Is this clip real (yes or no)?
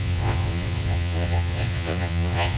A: no